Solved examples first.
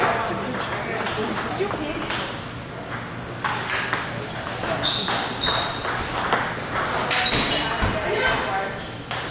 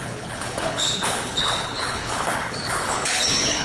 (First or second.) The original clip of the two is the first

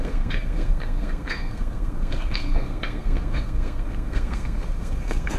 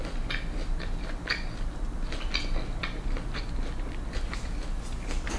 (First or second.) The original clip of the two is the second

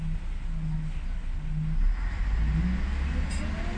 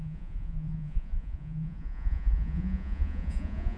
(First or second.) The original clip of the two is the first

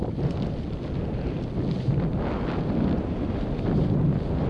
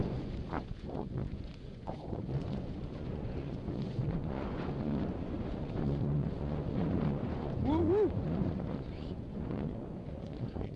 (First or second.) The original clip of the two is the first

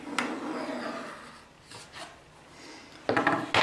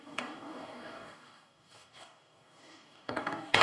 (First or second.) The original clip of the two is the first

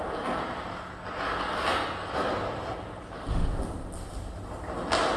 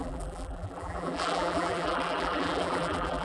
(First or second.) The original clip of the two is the first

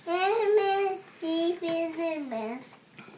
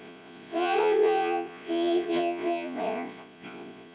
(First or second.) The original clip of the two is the first